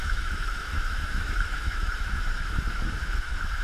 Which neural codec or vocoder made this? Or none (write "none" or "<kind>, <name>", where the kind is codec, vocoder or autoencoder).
autoencoder, DAC-VAE